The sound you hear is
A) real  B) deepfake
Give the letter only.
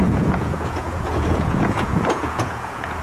B